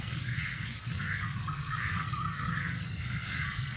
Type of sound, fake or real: fake